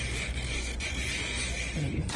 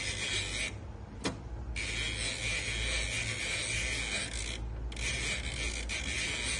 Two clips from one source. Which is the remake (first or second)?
first